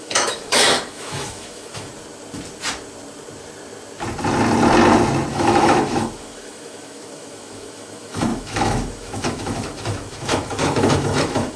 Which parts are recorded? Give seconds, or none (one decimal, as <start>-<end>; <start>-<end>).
1.9-5.3